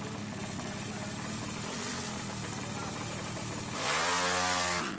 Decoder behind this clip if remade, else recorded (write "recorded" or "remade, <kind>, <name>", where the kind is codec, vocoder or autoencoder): recorded